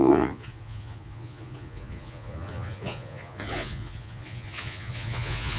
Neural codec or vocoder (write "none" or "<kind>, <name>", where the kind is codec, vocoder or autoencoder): vocoder, Vocos